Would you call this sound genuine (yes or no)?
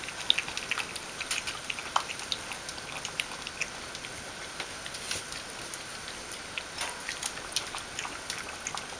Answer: yes